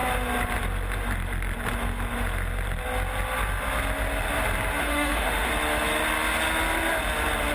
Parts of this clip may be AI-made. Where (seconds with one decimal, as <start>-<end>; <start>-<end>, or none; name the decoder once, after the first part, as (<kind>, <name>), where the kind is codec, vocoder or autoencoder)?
4.8-5.5 (autoencoder, DAC-VAE)